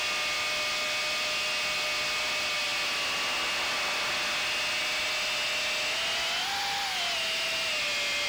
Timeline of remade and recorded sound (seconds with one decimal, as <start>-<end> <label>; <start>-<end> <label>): 0.0-8.3 recorded